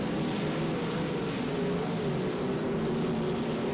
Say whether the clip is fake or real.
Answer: real